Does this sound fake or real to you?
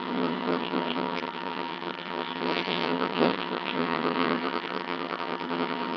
fake